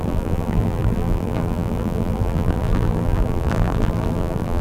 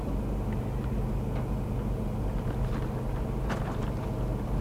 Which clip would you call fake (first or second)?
first